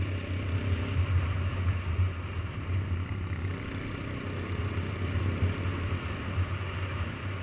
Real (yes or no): yes